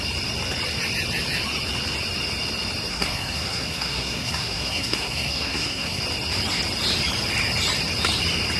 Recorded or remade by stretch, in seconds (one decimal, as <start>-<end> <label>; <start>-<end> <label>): 0.0-2.9 recorded; 2.9-6.0 remade; 6.0-8.6 recorded